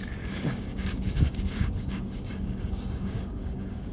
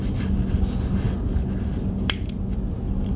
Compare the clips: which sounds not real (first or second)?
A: first